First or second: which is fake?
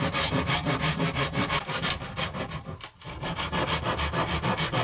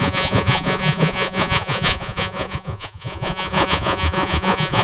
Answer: second